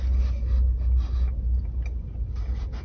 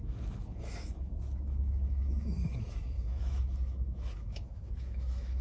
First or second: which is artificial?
second